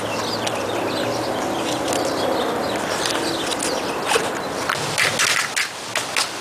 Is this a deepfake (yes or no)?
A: no